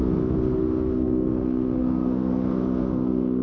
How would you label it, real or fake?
fake